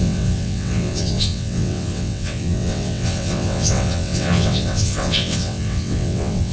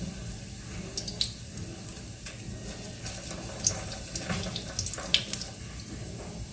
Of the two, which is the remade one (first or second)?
first